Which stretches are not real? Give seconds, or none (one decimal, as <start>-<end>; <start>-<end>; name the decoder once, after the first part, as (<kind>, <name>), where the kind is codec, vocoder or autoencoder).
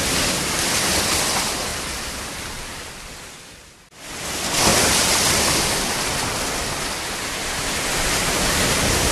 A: 1.7-2.8 (vocoder, BigVGAN v2); 4.7-5.9